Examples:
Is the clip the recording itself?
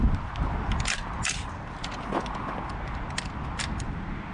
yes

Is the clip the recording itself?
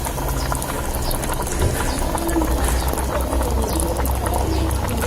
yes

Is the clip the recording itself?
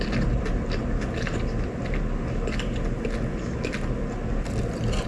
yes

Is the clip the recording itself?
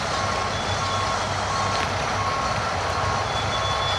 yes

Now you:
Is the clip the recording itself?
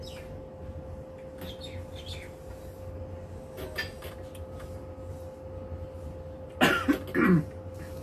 yes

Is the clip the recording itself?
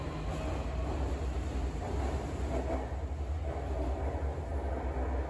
yes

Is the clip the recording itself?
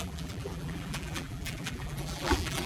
no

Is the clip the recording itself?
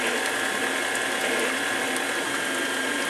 yes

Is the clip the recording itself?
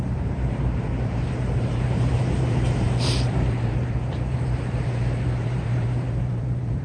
no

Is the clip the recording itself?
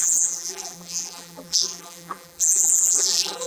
no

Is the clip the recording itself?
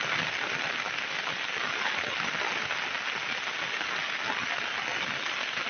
yes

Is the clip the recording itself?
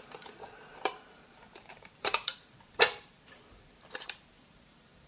no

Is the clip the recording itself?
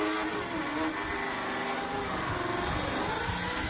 yes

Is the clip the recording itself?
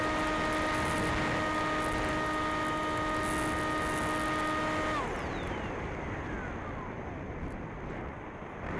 yes